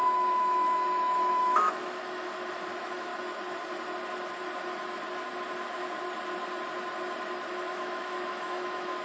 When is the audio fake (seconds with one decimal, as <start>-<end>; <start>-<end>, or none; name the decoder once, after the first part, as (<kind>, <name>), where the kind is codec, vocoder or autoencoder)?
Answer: 0.0-3.1 (autoencoder, DAC-VAE); 7.5-9.0